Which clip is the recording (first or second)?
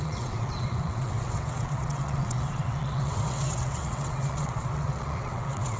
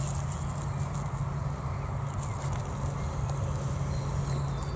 second